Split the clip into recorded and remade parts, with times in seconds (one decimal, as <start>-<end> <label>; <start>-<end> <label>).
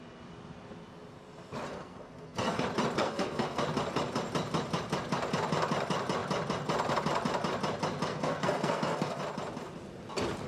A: 0.0-1.7 recorded; 1.7-2.6 remade; 2.6-3.0 recorded; 3.0-3.6 remade; 3.6-8.1 recorded; 8.1-9.2 remade; 9.2-10.5 recorded